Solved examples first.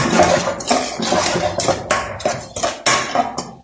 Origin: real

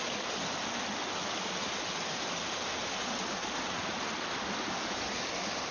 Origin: real